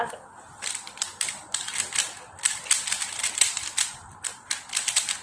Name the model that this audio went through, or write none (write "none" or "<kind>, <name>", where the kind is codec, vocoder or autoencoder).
none